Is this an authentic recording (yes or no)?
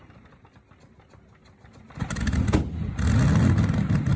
yes